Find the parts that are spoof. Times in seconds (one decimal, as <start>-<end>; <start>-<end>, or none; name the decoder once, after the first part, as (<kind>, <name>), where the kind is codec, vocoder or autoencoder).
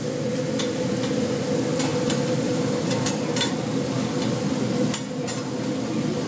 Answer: 1.9-3.5 (vocoder, BigVGAN v2)